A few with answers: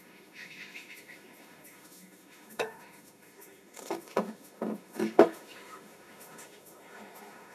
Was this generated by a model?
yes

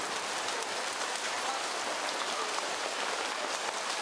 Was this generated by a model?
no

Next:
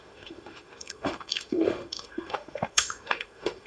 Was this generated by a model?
yes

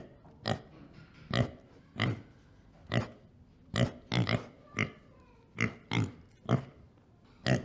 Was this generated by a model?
no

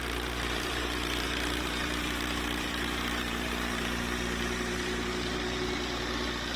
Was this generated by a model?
yes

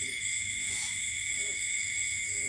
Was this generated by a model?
yes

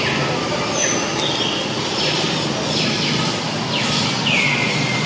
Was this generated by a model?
no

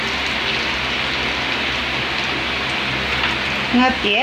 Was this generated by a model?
no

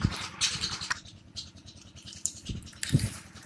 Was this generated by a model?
yes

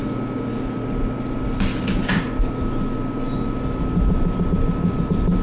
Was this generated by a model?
no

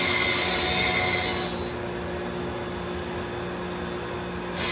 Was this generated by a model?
no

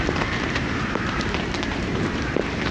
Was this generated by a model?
yes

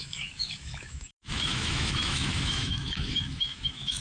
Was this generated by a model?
yes